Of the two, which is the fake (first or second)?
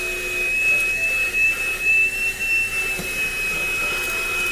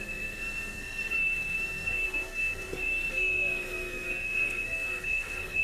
second